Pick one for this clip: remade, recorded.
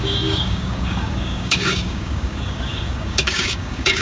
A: remade